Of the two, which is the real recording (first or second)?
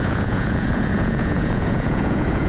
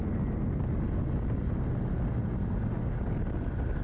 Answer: second